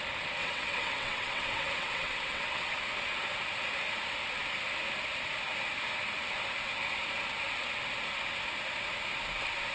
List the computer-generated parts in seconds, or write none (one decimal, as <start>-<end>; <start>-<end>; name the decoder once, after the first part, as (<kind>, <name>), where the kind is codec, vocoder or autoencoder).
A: 0.4-2.7 (vocoder, WaveNeXt)